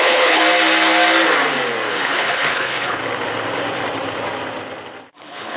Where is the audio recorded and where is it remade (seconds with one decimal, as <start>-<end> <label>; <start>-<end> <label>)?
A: 0.0-0.4 remade; 0.4-1.9 recorded; 1.9-3.0 remade; 3.0-5.1 recorded; 5.1-5.6 remade